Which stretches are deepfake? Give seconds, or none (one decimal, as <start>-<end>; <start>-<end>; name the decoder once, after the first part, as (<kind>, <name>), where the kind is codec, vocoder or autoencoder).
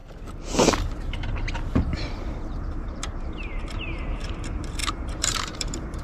1.9-4.3 (vocoder, BigVGAN v2); 4.8-6.0